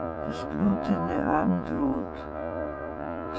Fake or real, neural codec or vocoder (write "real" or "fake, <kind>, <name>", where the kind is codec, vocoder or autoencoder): fake, vocoder, Vocos